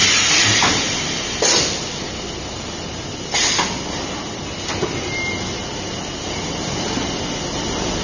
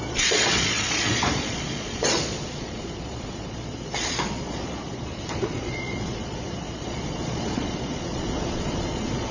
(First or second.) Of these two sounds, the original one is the first